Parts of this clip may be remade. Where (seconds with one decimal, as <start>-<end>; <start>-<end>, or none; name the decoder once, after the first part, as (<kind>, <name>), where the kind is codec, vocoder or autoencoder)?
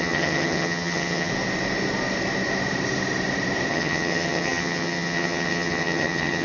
0.0-1.3 (vocoder, HiFi-GAN); 3.7-6.4